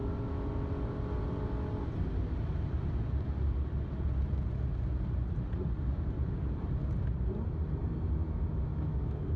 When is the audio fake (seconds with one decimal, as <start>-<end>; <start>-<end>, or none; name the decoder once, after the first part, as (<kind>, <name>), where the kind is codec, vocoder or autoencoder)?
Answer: 8.7-9.4 (autoencoder, DAC-VAE)